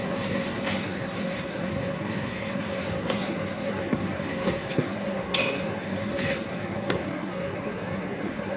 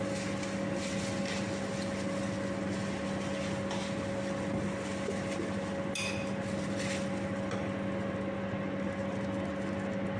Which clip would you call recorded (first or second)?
second